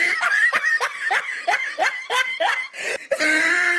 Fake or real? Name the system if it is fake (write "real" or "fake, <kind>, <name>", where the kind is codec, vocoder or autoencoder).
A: fake, vocoder, BigVGAN v2